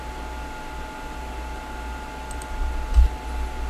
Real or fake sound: real